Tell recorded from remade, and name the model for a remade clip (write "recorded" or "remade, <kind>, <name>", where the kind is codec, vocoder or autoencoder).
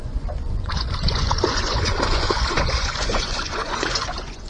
remade, vocoder, Vocos